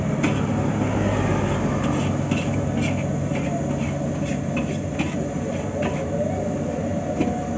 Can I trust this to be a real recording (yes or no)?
yes